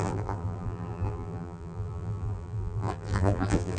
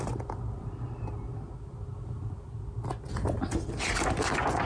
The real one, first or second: second